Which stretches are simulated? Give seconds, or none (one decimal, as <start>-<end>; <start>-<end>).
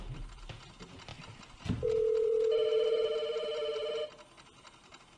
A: 1.1-4.0